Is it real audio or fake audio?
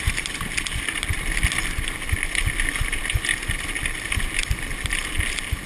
real